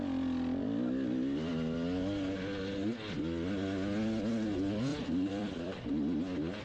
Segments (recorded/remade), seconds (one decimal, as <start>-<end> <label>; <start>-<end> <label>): 0.0-4.9 recorded; 4.9-5.9 remade; 5.9-6.6 recorded